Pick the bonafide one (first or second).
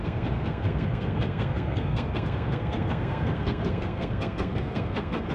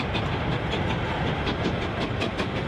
second